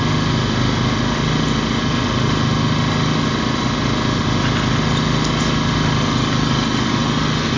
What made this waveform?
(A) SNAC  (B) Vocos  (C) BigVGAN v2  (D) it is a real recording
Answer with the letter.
D